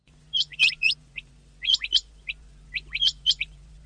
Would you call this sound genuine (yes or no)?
no